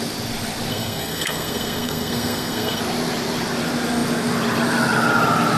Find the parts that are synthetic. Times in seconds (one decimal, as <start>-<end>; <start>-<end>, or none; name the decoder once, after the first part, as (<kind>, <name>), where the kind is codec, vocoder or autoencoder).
0.7-2.8 (codec, SNAC)